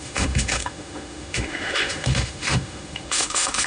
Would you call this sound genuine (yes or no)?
no